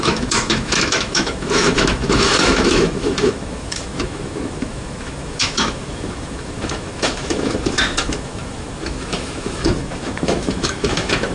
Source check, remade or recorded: remade